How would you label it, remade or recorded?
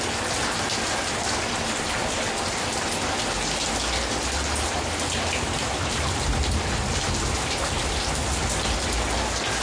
recorded